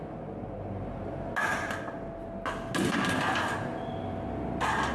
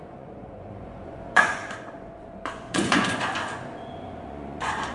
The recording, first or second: first